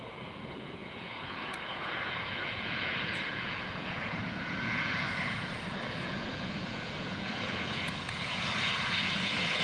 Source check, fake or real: fake